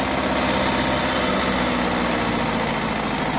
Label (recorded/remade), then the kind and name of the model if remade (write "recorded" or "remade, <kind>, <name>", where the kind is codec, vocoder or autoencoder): recorded